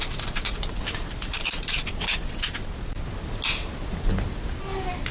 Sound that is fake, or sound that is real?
real